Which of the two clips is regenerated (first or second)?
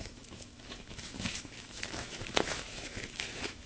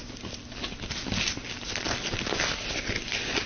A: first